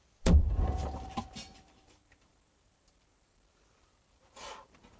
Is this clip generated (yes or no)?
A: yes